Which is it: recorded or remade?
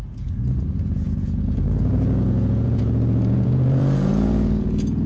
remade